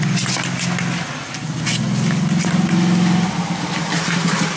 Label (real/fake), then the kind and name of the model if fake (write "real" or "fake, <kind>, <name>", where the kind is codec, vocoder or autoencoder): real